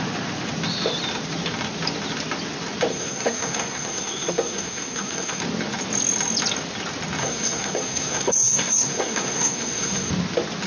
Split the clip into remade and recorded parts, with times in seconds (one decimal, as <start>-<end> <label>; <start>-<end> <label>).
0.0-2.9 recorded; 2.9-5.4 remade; 5.4-7.2 recorded; 7.2-10.1 remade; 10.1-10.7 recorded